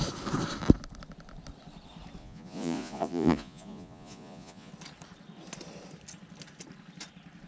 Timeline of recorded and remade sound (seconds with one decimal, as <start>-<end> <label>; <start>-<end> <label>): 0.0-2.2 recorded; 2.2-4.7 remade; 4.7-7.5 recorded